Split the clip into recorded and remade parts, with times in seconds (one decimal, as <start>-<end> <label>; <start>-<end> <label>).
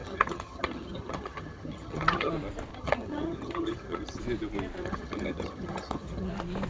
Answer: 0.0-2.3 remade; 2.3-2.7 recorded; 2.7-4.2 remade; 4.2-4.8 recorded; 4.8-6.3 remade; 6.3-6.7 recorded